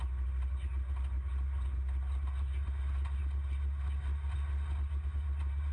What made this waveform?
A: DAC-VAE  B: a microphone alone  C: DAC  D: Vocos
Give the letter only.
B